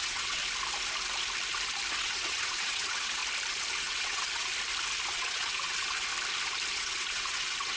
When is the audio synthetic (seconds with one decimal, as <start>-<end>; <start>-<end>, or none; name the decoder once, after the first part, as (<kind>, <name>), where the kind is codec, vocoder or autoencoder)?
0.0-0.4 (vocoder, WaveNeXt); 2.0-3.2; 3.8-4.5; 5.1-6.1; 6.7-7.8